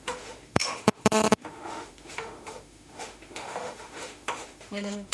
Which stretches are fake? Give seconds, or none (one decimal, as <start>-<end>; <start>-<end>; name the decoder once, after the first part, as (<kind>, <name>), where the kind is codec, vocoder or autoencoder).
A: 0.0-5.1 (autoencoder, DAC-VAE)